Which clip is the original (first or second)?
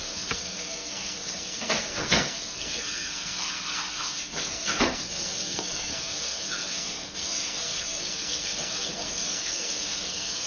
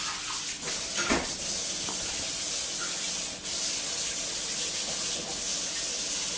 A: second